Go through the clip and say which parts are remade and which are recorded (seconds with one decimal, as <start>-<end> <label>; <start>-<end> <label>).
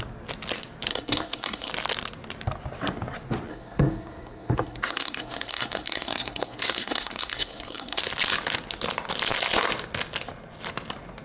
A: 0.0-0.9 recorded; 0.9-1.7 remade; 1.7-3.5 recorded; 3.5-8.0 remade; 8.0-11.2 recorded